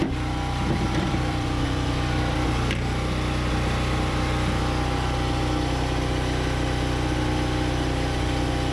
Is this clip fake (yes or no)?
yes